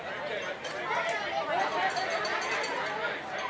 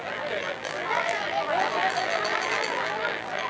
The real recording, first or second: first